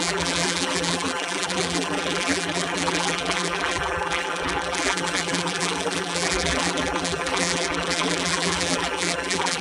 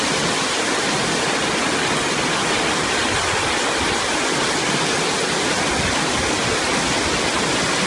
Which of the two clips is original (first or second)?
second